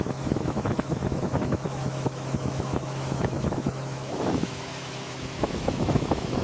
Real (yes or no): no